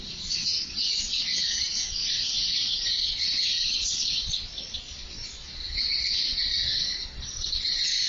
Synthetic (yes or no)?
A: yes